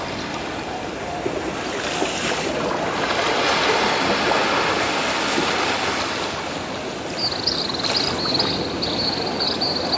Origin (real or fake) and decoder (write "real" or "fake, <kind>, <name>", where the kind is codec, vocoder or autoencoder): real